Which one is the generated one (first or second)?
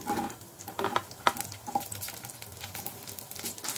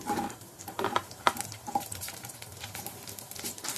second